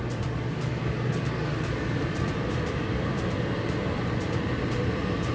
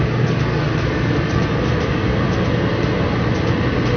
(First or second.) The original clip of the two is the second